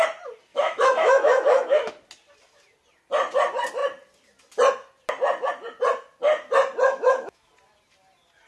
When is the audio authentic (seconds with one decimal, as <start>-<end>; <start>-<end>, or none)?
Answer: 0.0-0.5; 1.9-6.9; 7.5-8.5